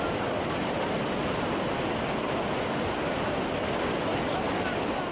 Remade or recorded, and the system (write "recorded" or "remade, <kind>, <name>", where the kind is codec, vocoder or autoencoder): recorded